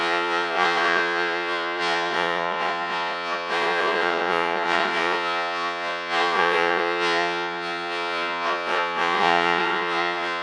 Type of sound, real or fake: fake